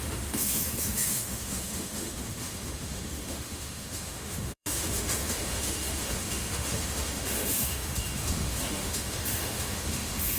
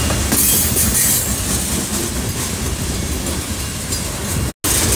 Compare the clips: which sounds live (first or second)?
second